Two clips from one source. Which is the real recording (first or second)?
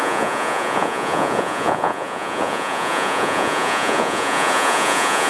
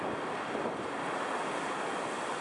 second